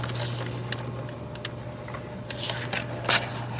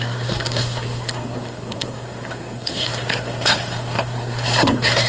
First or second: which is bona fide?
first